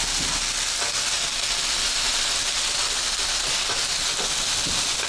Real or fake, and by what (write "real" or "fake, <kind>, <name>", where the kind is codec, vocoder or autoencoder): real